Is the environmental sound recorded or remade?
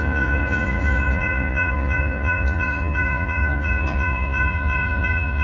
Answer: remade